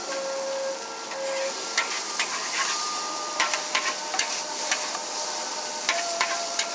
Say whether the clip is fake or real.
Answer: real